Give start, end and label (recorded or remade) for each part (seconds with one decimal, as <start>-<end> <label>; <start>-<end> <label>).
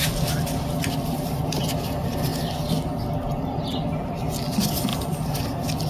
0.0-5.9 recorded